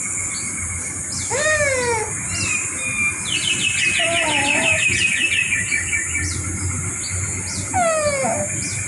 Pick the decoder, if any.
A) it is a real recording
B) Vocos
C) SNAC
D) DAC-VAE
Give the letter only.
A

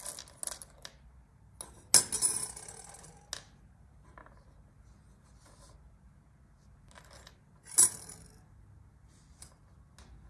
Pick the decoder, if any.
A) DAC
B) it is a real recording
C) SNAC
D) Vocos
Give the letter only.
B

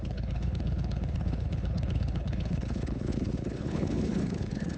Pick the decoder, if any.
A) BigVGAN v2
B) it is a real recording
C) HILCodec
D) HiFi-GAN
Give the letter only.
C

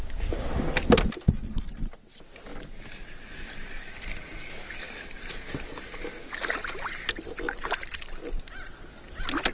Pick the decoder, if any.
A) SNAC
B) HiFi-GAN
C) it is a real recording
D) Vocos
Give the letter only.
C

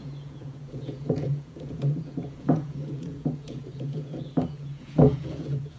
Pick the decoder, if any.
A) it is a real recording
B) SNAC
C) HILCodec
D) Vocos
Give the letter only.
D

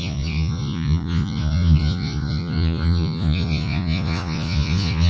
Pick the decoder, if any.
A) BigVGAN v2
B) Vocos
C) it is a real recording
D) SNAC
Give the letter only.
B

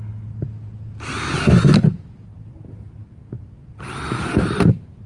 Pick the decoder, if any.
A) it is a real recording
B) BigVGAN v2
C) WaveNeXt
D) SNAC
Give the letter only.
A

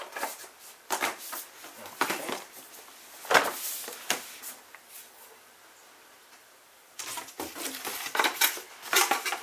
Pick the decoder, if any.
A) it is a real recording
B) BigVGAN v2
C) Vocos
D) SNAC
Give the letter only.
B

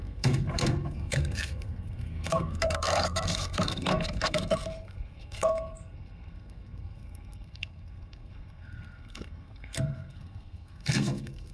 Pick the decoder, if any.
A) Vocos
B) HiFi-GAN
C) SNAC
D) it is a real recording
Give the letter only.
C